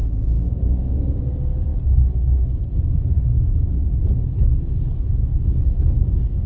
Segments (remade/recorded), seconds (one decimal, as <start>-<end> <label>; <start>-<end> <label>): 0.0-1.2 remade; 1.2-3.3 recorded; 3.3-4.0 remade; 4.0-5.3 recorded; 5.3-6.5 remade